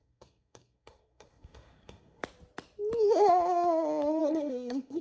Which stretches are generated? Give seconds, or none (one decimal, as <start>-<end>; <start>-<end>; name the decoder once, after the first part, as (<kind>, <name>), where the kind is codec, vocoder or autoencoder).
0.0-2.2 (codec, SNAC); 4.2-5.0